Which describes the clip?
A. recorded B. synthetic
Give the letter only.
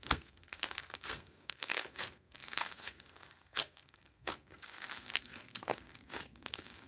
B